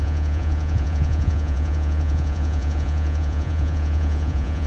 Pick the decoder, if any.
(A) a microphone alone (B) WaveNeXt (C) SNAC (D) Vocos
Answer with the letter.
D